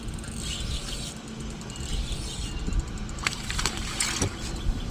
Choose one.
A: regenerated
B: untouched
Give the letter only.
B